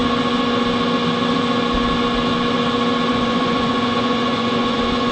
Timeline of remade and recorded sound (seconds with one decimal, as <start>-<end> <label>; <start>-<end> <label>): 0.0-3.1 recorded; 3.1-5.1 remade

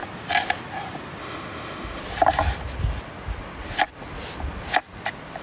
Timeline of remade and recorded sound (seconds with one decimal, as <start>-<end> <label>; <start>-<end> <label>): 0.0-1.2 recorded; 1.2-2.0 remade; 2.0-5.4 recorded

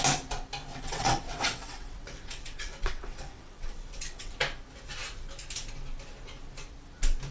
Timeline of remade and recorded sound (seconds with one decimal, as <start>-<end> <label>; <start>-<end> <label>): 0.0-0.7 recorded; 0.7-4.3 remade; 4.3-7.3 recorded

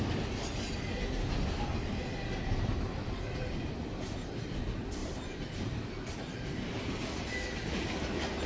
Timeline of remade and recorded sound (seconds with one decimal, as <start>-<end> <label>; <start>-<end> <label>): 0.0-5.0 recorded; 5.0-6.7 remade; 6.7-8.5 recorded

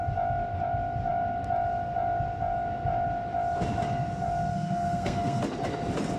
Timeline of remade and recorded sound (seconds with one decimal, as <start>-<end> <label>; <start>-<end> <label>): 0.0-4.5 recorded; 4.5-5.4 remade; 5.4-6.2 recorded

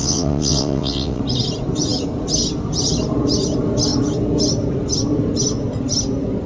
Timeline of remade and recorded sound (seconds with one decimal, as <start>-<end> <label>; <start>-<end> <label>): 0.0-1.2 remade; 1.2-6.5 recorded

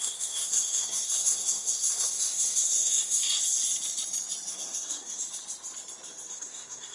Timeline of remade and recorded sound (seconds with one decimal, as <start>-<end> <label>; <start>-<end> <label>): 0.0-3.2 remade; 3.2-4.5 recorded; 4.5-5.2 remade; 5.2-6.3 recorded; 6.3-6.9 remade